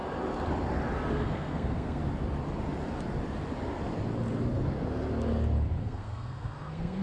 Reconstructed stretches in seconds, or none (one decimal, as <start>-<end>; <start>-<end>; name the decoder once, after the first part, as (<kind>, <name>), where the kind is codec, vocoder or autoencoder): 1.1-2.0 (codec, SNAC); 5.8-7.0

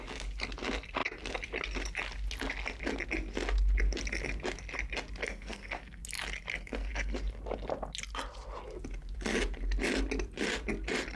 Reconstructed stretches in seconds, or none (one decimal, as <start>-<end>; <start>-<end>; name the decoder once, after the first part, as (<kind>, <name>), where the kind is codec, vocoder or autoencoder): 5.2-6.0 (codec, SNAC); 6.5-7.2

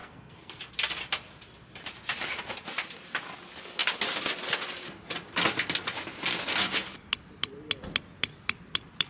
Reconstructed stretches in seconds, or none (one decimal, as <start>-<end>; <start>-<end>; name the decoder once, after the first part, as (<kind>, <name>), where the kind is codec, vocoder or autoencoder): 0.0-0.6 (codec, SNAC)

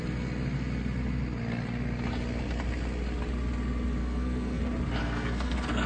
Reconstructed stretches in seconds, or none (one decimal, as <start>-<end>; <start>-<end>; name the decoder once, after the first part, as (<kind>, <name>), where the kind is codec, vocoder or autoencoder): 4.0-4.6 (codec, SNAC); 5.0-5.9